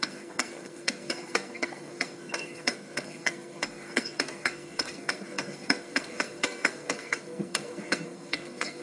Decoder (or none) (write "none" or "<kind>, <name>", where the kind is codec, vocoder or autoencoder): codec, SNAC